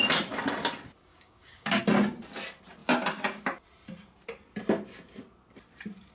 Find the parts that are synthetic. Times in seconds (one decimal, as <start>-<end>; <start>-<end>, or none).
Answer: 1.1-1.8